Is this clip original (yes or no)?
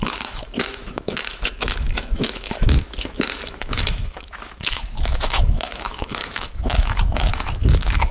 no